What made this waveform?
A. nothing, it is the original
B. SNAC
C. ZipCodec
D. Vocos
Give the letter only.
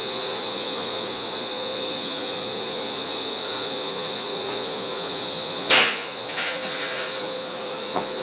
D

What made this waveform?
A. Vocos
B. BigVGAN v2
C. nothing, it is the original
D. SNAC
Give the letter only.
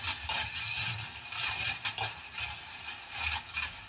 C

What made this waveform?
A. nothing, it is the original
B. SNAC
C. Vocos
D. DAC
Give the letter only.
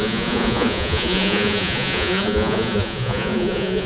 C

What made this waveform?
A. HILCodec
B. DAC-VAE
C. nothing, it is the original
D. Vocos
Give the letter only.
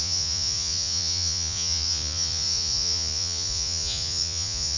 D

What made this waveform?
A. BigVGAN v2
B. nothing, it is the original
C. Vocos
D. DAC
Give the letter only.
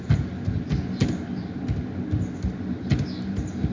B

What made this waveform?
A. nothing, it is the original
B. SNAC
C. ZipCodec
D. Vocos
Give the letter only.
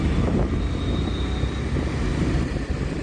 A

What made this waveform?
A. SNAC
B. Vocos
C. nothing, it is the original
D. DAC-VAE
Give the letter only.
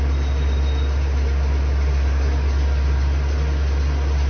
C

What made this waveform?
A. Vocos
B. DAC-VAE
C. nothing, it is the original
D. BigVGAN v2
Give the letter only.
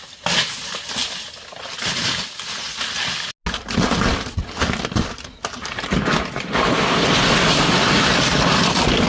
C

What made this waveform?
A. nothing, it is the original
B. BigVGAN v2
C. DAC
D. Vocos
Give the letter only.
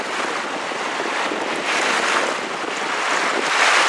A